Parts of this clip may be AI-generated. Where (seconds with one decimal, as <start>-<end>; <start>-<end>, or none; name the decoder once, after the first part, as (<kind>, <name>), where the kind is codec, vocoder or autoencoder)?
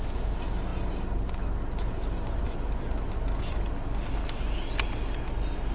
none